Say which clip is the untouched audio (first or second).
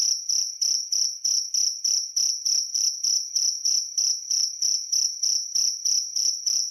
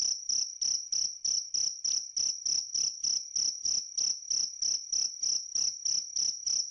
second